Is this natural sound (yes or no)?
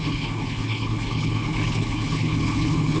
no